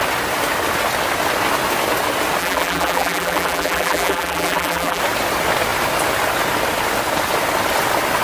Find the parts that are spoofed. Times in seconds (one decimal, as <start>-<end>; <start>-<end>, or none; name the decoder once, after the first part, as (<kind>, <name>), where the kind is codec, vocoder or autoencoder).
2.4-5.0 (vocoder, BigVGAN v2)